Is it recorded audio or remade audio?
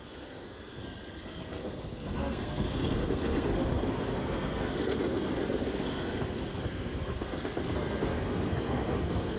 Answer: remade